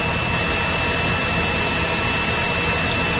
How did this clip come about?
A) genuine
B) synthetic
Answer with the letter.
A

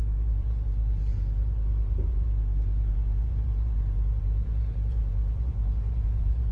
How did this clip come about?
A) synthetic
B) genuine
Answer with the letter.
A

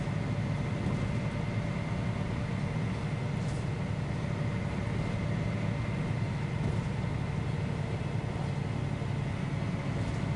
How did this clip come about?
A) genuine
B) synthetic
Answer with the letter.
A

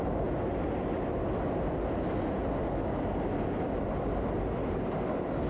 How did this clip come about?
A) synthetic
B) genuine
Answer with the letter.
B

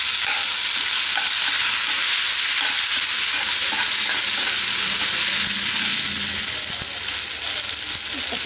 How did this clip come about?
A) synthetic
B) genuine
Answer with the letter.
B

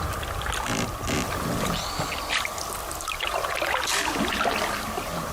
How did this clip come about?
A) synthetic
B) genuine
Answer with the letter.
B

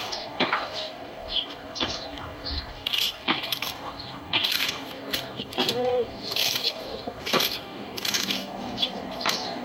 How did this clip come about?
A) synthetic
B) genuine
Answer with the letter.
A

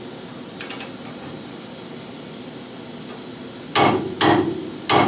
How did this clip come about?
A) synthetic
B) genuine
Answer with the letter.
B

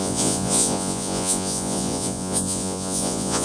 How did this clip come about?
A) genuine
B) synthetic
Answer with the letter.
B